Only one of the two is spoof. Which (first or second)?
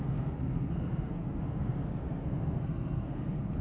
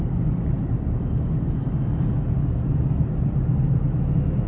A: first